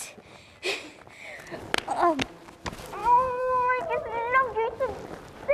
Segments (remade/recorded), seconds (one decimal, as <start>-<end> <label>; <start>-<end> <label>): 0.0-3.0 recorded; 3.0-3.8 remade; 3.8-5.5 recorded

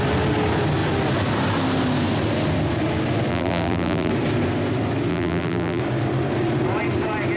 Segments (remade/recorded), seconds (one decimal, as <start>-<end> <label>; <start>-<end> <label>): 0.0-3.3 recorded; 3.3-4.1 remade; 4.1-5.1 recorded; 5.1-5.8 remade; 5.8-7.4 recorded

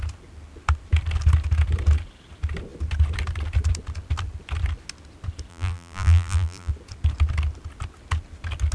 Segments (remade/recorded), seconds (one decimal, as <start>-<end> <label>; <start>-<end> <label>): 0.0-5.5 recorded; 5.5-6.7 remade; 6.7-8.7 recorded

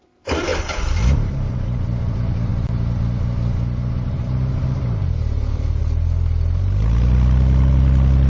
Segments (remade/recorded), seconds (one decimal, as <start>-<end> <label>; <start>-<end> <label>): 0.0-0.5 remade; 0.5-1.5 recorded; 1.5-2.5 remade; 2.5-3.9 recorded; 3.9-5.8 remade; 5.8-8.3 recorded

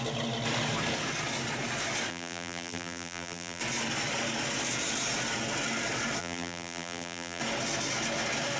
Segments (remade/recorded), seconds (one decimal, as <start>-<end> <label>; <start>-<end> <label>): 0.0-2.1 recorded; 2.1-3.6 remade; 3.6-6.2 recorded; 6.2-7.4 remade; 7.4-8.6 recorded

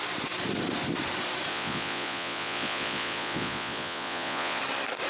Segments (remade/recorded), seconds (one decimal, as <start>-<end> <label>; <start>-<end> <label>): 0.0-1.5 recorded; 1.5-4.6 remade; 4.6-5.1 recorded

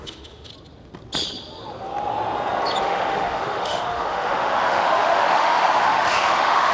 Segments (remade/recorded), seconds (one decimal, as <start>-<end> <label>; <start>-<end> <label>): 0.0-0.5 remade; 0.5-2.8 recorded; 2.8-6.7 remade

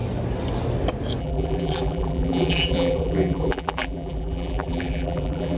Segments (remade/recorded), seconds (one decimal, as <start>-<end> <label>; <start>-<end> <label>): 0.0-1.2 recorded; 1.2-5.6 remade